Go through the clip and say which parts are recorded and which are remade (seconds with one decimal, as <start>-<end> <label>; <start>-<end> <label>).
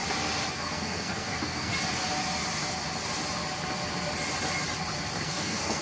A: 0.0-0.5 recorded; 0.5-1.7 remade; 1.7-5.2 recorded; 5.2-5.8 remade